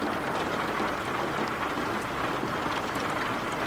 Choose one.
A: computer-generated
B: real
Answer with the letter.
B